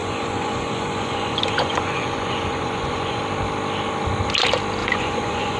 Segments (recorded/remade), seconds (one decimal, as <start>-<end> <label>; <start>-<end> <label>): 0.0-3.2 remade; 3.2-4.8 recorded; 4.8-5.6 remade